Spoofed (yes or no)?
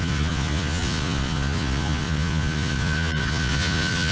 yes